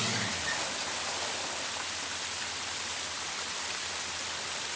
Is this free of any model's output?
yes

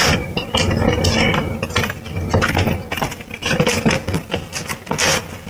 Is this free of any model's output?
yes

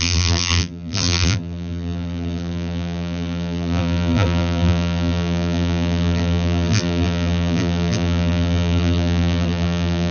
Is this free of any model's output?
no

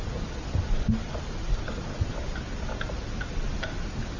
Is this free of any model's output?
yes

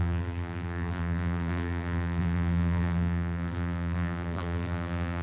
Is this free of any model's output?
no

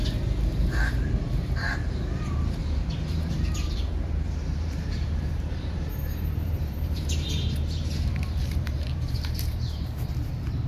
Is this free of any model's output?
no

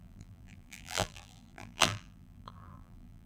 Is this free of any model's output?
no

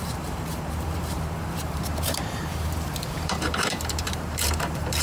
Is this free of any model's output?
no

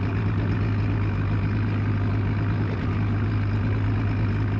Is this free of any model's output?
yes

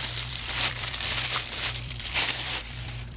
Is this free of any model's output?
no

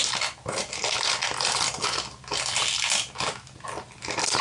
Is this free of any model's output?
yes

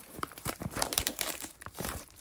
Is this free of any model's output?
no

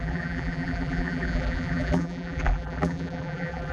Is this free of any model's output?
no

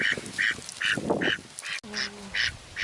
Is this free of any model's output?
yes